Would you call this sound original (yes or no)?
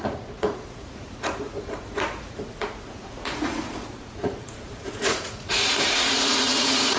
no